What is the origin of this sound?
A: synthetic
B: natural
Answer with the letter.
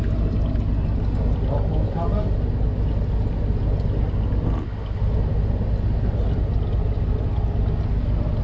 B